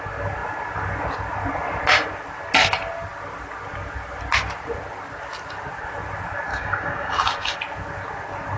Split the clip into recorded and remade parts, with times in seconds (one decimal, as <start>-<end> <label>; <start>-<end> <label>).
0.0-6.5 recorded; 6.5-7.6 remade; 7.6-8.6 recorded